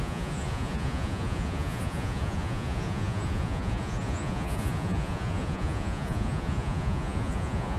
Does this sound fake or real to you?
fake